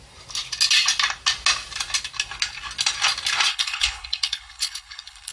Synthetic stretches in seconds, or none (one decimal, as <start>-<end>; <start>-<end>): 3.5-5.3